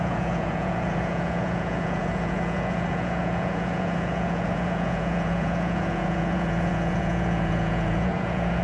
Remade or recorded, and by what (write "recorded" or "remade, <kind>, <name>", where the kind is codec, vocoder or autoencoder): remade, vocoder, Vocos